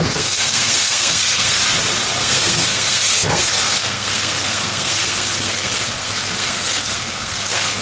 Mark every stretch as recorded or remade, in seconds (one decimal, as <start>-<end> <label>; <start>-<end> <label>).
0.0-1.6 remade; 1.6-2.2 recorded; 2.2-7.8 remade